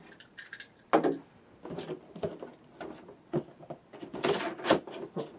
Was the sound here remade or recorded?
recorded